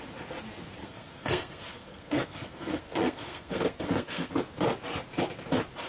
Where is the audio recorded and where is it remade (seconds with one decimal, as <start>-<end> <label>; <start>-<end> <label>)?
0.0-0.8 recorded; 0.8-4.3 remade; 4.3-5.9 recorded